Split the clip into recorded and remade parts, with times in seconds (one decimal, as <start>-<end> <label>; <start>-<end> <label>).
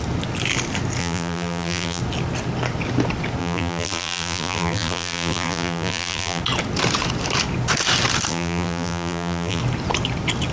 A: 0.0-1.0 recorded; 1.0-2.0 remade; 2.0-3.4 recorded; 3.4-6.4 remade; 6.4-8.3 recorded; 8.3-9.6 remade; 9.6-10.5 recorded